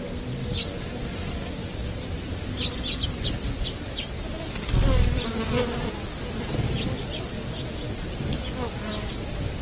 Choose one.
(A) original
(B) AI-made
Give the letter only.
A